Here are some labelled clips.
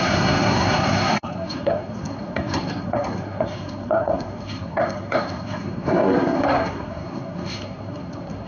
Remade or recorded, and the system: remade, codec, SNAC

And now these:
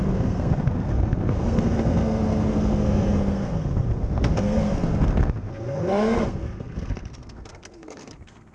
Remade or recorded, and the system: remade, codec, SNAC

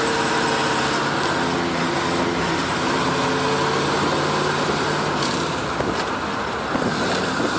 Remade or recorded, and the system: recorded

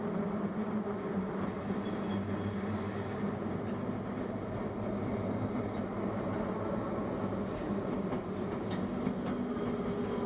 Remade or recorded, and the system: recorded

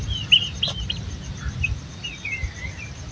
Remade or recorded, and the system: recorded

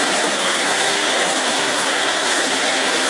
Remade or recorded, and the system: remade, codec, SNAC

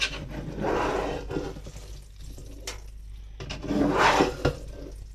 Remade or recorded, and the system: recorded